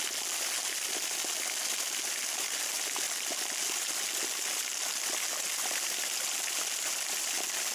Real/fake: real